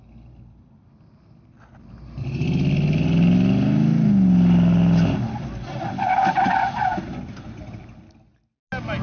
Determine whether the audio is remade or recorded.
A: recorded